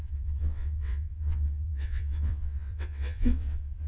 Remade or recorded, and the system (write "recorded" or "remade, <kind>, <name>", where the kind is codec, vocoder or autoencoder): remade, vocoder, WaveNeXt